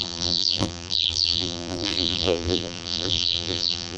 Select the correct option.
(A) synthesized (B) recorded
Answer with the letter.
A